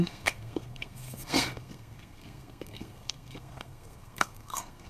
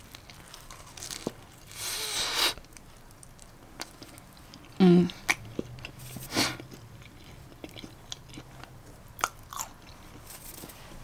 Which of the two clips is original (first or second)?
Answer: second